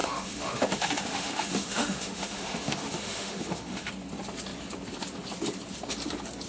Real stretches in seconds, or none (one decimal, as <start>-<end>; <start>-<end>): 3.9-6.5